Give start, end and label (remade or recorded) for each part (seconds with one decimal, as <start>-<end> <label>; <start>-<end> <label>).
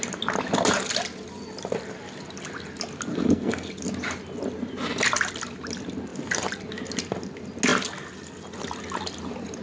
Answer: 0.0-3.1 recorded; 3.1-3.7 remade; 3.7-9.6 recorded